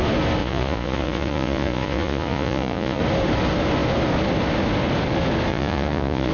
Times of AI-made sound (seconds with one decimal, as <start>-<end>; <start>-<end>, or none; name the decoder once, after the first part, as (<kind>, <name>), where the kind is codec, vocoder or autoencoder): 0.4-3.0 (vocoder, Vocos); 5.5-6.3